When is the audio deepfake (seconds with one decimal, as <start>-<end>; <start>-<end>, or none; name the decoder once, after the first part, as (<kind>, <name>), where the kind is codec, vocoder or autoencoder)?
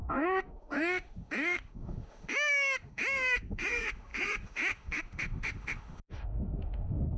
0.0-7.2 (autoencoder, DAC-VAE)